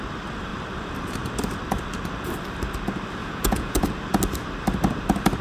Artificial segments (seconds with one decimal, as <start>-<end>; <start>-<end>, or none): 3.2-3.8